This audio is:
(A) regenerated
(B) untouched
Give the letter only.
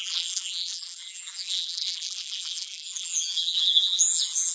A